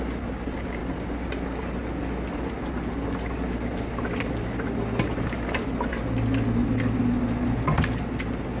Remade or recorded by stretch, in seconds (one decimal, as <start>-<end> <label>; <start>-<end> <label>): 0.0-8.6 recorded